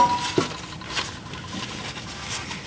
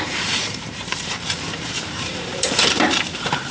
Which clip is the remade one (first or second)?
second